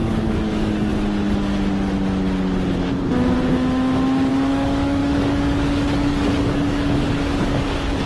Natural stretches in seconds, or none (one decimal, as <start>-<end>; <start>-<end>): 0.9-4.3